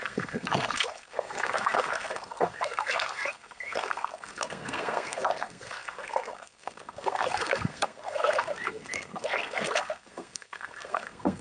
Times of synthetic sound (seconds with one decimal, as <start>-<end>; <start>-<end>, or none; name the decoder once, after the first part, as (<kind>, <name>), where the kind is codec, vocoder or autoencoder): 0.0-11.4 (codec, SNAC)